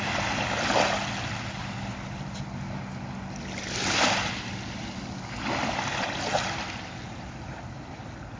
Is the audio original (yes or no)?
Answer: yes